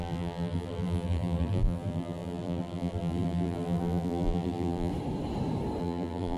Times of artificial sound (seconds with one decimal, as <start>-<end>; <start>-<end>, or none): 0.0-4.9; 5.8-6.4